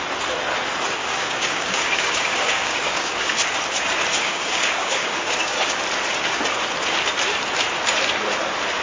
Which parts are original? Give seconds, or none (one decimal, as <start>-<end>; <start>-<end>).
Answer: 0.0-1.0; 3.3-4.2; 5.8-8.8